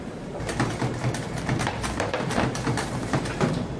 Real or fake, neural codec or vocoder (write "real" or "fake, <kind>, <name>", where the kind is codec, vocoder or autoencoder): fake, vocoder, BigVGAN v2